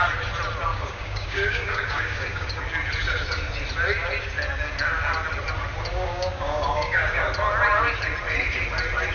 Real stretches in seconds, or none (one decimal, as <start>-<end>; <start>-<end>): 0.0-0.7; 2.6-5.9; 7.2-9.1